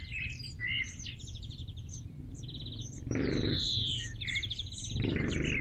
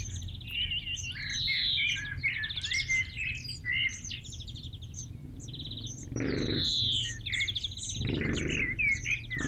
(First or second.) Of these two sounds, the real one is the second